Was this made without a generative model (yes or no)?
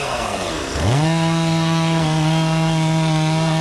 no